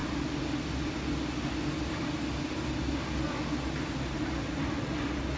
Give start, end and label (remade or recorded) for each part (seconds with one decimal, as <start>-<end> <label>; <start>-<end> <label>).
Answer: 0.0-5.4 recorded